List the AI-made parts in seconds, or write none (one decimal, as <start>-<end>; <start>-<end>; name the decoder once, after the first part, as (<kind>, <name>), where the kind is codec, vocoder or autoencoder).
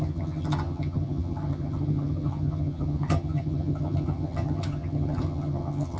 0.0-6.0 (vocoder, HiFi-GAN)